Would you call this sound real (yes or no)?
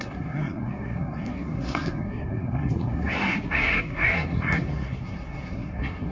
no